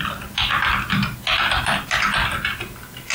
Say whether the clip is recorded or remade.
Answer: recorded